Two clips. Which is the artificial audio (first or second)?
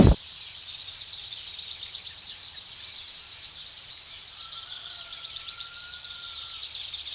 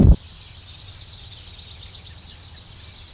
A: first